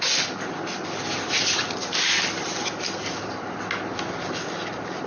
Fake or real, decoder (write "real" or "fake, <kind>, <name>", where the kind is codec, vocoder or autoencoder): real